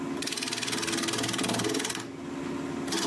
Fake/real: real